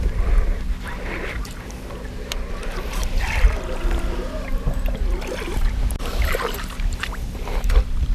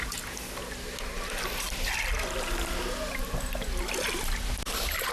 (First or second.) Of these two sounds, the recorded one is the second